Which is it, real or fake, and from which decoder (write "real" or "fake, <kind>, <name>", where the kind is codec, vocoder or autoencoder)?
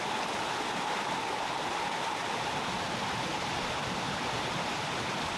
real